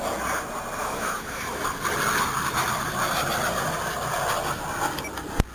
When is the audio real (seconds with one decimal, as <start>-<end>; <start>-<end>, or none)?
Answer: 0.0-0.8; 1.6-5.5